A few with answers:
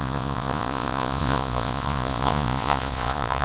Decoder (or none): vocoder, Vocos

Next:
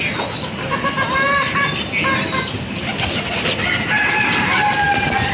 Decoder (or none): none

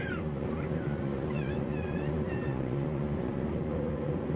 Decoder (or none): vocoder, Vocos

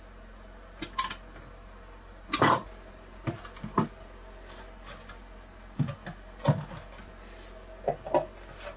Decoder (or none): none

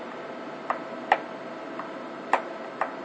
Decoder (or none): none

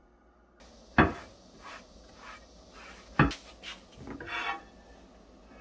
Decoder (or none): none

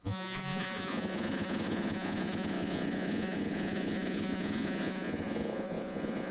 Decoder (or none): vocoder, Vocos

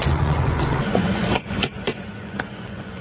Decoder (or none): vocoder, Vocos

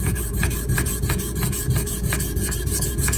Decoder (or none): vocoder, Vocos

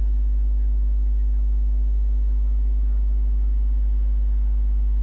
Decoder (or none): none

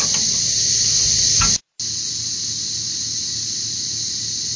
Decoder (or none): none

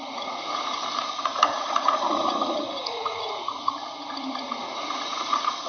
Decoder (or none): vocoder, Vocos